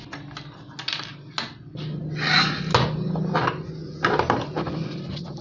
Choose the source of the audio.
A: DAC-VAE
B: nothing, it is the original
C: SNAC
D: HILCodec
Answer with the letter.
B